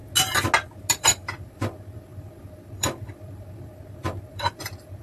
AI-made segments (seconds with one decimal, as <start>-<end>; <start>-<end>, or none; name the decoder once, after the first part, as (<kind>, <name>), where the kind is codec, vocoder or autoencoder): 0.9-5.0 (vocoder, BigVGAN v2)